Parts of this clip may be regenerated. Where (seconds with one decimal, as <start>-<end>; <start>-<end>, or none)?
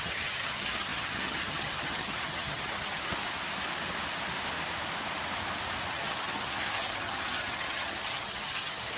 0.0-3.1; 5.9-9.0